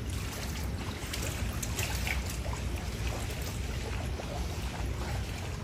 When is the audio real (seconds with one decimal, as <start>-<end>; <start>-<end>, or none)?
0.0-5.6